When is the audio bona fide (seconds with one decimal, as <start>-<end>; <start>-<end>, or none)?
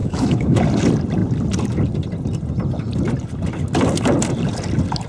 0.6-5.1